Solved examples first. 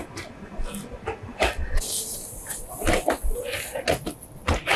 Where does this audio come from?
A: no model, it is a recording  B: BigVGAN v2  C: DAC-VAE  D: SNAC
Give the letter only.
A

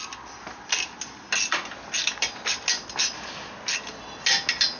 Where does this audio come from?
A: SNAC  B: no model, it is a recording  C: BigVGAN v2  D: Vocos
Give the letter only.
B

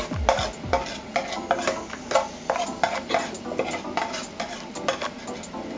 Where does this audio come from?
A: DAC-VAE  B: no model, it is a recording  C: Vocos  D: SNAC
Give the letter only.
B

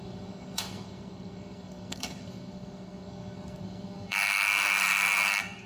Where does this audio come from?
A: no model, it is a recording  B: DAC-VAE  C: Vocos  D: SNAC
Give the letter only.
D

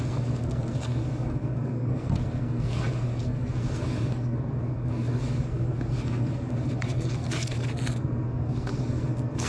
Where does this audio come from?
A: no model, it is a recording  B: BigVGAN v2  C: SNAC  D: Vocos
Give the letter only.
C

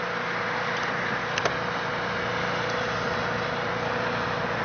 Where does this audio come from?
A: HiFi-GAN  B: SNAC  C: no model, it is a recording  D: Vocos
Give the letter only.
C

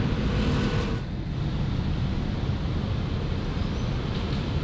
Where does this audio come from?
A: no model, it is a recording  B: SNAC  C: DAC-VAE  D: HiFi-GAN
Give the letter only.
A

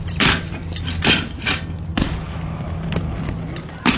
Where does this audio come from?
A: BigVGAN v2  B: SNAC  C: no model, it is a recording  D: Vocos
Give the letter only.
C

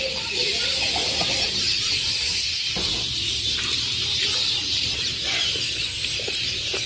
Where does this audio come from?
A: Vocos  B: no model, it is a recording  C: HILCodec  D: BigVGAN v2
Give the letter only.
D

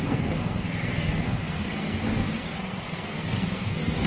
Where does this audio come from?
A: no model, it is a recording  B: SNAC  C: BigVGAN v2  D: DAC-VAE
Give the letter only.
B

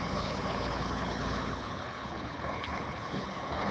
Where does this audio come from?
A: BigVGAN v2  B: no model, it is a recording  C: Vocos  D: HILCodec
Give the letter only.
D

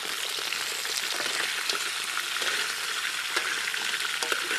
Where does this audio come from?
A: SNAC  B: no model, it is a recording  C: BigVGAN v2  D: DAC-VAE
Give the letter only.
B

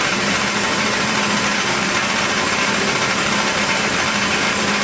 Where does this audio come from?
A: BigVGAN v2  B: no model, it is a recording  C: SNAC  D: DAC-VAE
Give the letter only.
A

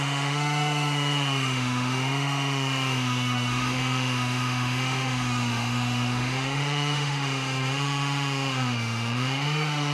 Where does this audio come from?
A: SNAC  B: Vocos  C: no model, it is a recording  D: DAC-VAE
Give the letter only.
D